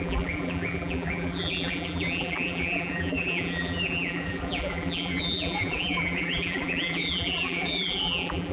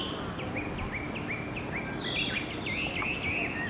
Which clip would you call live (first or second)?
second